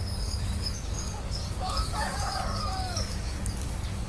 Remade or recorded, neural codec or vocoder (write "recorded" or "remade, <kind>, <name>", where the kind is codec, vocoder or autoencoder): remade, codec, DAC